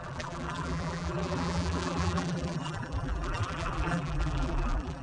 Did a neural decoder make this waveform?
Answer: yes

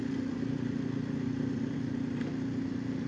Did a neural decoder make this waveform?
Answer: no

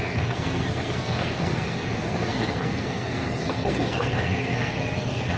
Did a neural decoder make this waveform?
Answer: yes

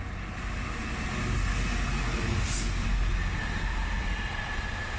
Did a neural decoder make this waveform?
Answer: no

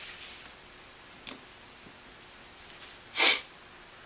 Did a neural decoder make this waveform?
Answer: no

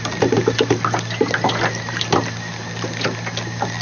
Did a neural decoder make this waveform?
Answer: no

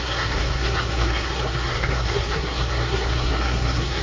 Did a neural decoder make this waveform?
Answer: yes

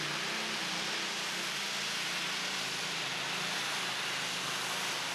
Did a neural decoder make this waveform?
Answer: no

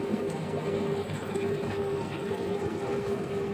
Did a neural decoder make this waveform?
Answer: yes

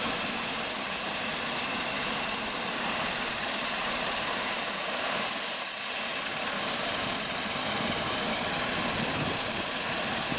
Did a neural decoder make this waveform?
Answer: yes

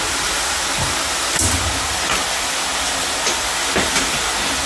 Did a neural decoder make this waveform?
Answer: no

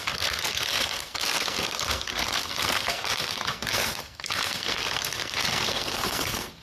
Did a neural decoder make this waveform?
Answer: yes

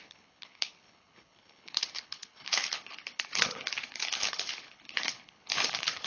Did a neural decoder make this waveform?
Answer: yes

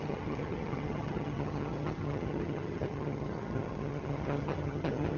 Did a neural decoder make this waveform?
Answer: yes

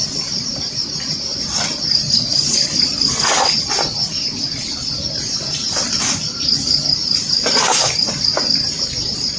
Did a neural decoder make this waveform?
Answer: no